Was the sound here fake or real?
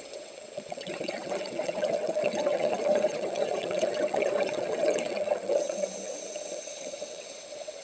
fake